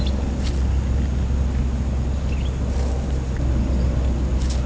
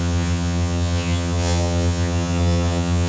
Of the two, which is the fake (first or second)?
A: second